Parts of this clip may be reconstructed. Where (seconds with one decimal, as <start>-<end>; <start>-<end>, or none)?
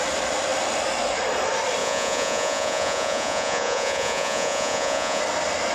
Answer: 1.8-5.2